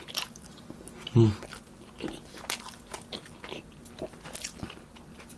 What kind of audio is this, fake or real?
real